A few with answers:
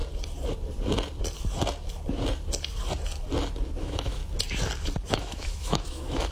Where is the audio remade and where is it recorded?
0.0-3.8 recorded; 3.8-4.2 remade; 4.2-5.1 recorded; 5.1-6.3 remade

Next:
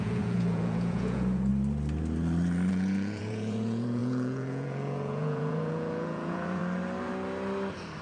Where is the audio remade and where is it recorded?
0.0-1.5 remade; 1.5-2.7 recorded; 2.7-6.6 remade; 6.6-8.0 recorded

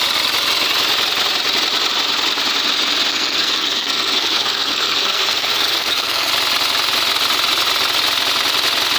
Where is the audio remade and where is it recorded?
0.0-3.1 recorded; 3.1-6.3 remade; 6.3-9.0 recorded